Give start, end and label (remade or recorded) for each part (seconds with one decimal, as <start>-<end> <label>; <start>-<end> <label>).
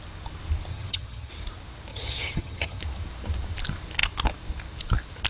0.0-0.7 recorded; 0.7-1.3 remade; 1.3-1.9 recorded; 1.9-2.8 remade; 2.8-5.3 recorded